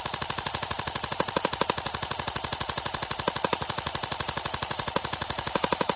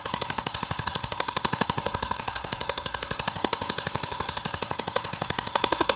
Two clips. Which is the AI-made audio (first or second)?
second